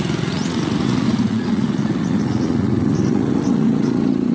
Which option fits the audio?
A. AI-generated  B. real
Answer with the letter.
A